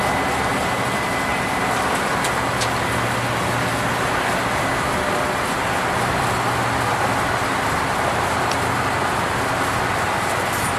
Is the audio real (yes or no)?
yes